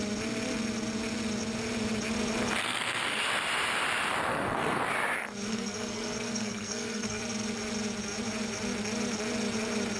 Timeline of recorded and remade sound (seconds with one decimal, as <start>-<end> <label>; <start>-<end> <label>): 0.0-2.6 recorded; 2.6-3.2 remade; 3.2-4.3 recorded; 4.3-4.8 remade; 4.8-5.5 recorded; 5.5-7.2 remade; 7.2-10.0 recorded